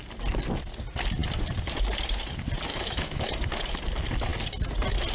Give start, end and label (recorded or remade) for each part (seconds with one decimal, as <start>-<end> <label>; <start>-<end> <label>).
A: 0.0-2.7 recorded; 2.7-3.3 remade; 3.3-5.1 recorded